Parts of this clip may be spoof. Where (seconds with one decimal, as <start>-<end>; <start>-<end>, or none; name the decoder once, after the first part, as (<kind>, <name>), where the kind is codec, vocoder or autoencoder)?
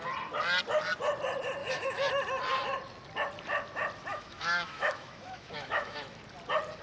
1.6-2.1 (autoencoder, DAC-VAE); 4.1-6.2